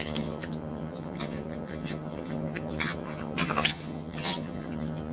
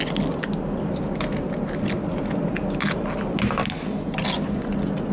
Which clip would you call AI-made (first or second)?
first